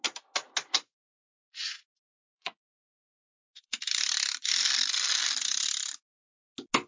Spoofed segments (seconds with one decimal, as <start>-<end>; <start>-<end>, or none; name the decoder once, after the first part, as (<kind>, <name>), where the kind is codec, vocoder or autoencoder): 1.2-3.8 (vocoder, Vocos)